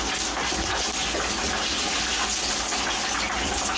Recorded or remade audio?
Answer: recorded